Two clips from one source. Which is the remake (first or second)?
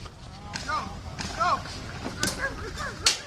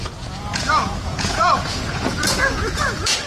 second